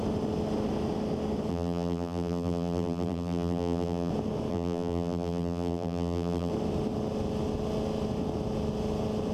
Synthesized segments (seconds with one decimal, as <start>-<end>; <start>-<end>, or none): 1.5-4.1; 4.5-6.5